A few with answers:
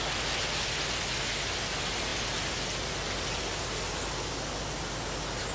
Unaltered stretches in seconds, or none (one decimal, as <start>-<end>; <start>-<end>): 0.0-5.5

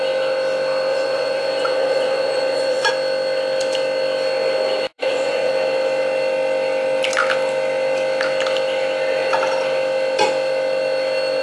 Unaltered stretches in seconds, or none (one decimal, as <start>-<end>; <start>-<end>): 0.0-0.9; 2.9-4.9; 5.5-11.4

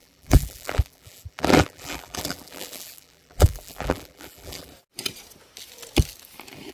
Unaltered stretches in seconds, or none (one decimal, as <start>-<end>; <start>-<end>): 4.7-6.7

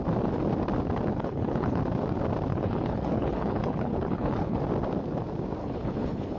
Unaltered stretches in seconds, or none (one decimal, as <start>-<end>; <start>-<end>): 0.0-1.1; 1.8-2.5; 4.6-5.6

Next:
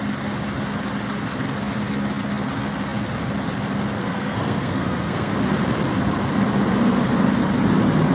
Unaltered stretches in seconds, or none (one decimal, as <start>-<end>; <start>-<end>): 0.0-4.0; 5.3-8.1

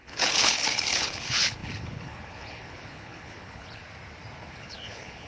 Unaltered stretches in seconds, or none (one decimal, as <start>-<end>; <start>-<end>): 3.8-4.4

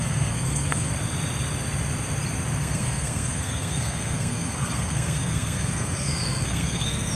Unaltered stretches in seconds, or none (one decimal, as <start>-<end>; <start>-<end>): 0.9-2.6

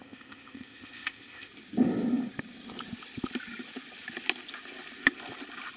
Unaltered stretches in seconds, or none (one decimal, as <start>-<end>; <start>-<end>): 1.5-5.8